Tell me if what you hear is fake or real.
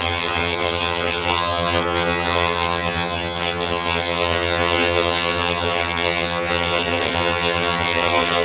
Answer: fake